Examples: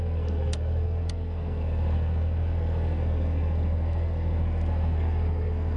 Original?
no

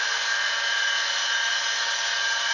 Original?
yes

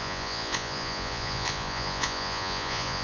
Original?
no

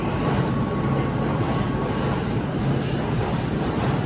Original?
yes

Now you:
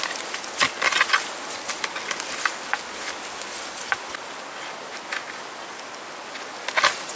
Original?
yes